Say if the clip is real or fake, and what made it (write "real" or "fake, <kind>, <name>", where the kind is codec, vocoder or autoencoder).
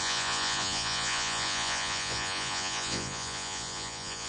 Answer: fake, vocoder, Vocos